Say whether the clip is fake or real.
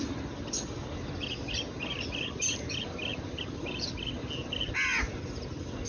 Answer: real